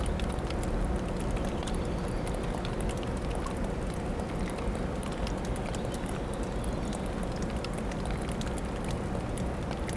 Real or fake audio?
real